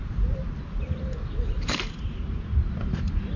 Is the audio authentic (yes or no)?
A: yes